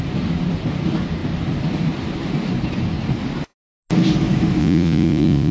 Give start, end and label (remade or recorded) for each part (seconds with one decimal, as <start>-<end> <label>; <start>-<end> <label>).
0.0-4.6 recorded; 4.6-5.5 remade